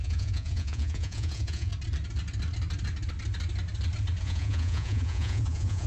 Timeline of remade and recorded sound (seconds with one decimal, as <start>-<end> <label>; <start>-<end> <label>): 0.0-1.7 remade; 1.7-4.2 recorded; 4.2-5.9 remade